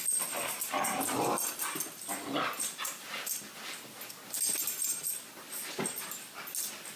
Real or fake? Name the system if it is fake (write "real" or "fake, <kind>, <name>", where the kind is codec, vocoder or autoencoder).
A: real